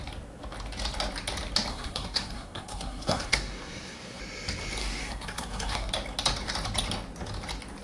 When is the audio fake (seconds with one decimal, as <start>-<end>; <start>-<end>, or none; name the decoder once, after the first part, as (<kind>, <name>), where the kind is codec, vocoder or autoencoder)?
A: 1.7-4.2 (codec, SNAC); 4.8-5.9